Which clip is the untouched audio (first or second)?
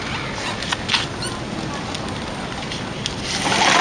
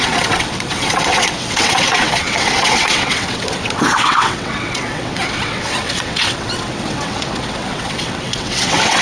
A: first